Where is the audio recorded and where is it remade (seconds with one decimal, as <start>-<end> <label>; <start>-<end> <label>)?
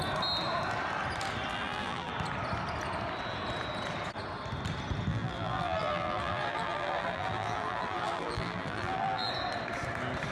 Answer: 0.0-1.5 recorded; 1.5-2.1 remade; 2.1-5.1 recorded; 5.1-9.3 remade; 9.3-10.3 recorded